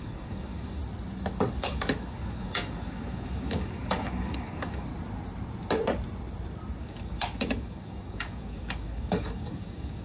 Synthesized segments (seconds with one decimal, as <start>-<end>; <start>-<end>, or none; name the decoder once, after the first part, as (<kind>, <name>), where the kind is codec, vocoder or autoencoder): 0.0-0.8 (codec, DAC); 1.6-4.9; 6.8-10.0